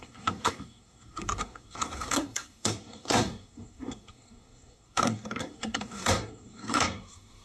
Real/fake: fake